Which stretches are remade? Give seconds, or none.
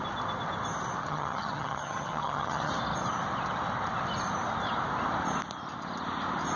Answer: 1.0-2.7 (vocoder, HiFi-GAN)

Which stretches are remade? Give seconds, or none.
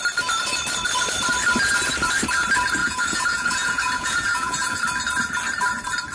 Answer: 2.8-4.8 (vocoder, Vocos)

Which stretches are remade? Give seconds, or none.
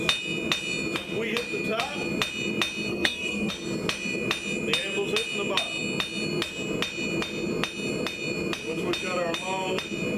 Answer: 2.9-3.5 (codec, SNAC)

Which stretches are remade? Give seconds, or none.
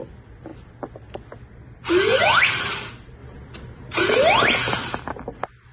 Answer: 3.2-4.0 (vocoder, BigVGAN v2)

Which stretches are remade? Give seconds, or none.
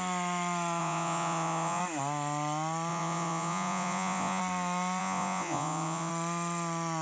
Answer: 0.8-1.8 (vocoder, Vocos); 2.9-4.4; 5.0-6.1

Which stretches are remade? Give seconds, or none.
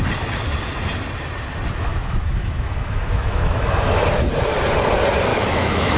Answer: 1.9-3.7 (autoencoder, DAC-VAE); 5.3-6.0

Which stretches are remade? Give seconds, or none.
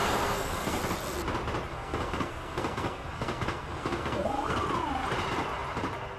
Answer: 0.0-0.8 (codec, SNAC); 1.7-4.7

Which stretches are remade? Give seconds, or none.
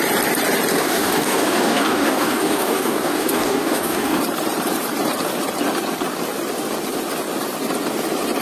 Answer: 0.7-4.2 (codec, DAC)